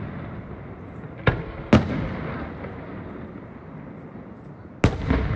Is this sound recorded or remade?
recorded